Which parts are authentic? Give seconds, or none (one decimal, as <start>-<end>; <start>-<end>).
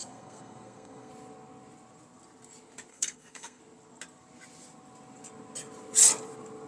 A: 1.1-2.9; 3.6-6.7